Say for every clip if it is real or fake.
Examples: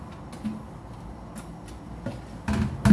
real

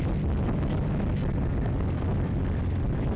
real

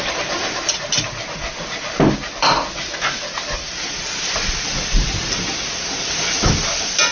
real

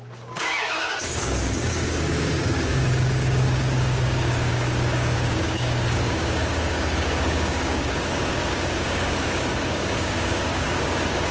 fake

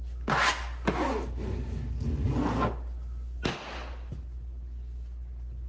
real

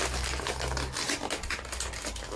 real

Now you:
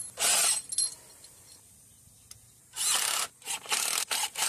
real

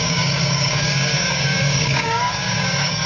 fake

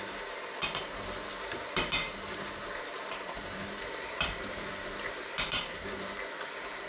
fake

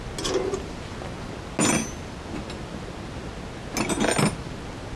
real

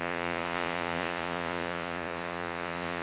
fake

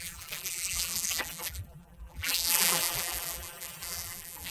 fake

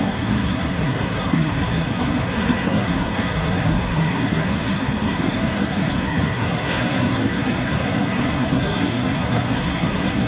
fake